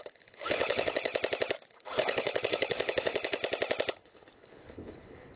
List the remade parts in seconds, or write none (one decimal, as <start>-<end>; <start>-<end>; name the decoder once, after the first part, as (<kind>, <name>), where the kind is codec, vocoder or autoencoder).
0.0-1.1 (codec, HILCodec); 1.7-3.4; 3.9-5.4